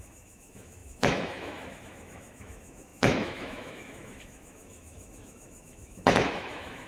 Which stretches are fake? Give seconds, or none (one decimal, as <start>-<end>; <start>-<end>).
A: 0.0-6.9